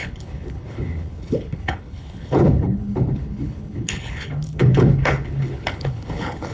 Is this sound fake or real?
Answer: fake